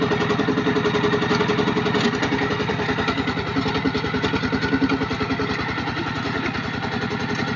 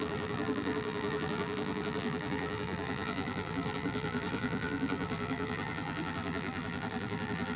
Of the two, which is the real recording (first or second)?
first